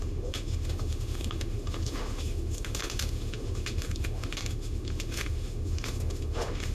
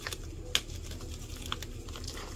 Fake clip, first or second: first